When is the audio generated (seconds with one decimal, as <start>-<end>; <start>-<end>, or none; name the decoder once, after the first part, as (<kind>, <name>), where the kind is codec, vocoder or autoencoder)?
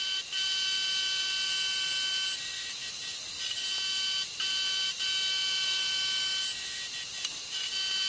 none